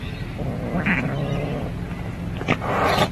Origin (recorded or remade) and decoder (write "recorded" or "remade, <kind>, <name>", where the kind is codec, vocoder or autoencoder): recorded